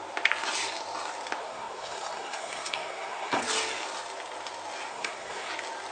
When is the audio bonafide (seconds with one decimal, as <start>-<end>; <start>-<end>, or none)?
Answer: 0.0-1.4; 3.4-4.9; 5.5-5.9